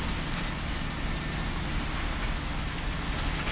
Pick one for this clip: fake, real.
real